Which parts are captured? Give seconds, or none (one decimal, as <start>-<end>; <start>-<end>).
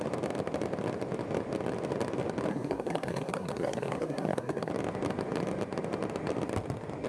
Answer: 0.0-2.5; 4.7-7.1